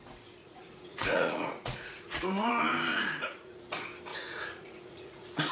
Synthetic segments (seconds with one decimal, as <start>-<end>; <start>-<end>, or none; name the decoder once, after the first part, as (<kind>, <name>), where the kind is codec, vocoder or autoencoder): 0.4-2.5 (vocoder, Vocos); 2.9-3.6; 4.1-5.5